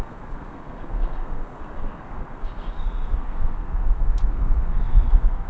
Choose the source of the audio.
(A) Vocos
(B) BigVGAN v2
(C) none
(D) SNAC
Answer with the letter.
D